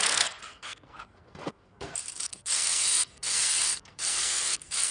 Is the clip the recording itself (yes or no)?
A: no